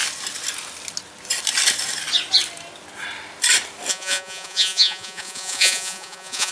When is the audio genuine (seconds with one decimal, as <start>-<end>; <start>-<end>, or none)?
0.0-3.9